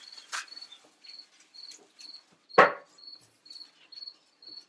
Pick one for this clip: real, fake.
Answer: real